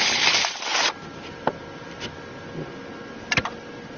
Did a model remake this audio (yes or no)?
no